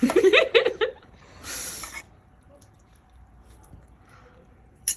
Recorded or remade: remade